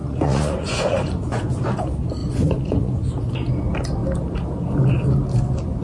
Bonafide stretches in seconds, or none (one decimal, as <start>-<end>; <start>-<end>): 1.6-2.2; 3.0-5.8